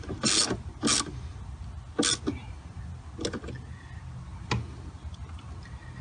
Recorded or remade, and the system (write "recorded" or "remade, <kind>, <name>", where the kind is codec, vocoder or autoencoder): recorded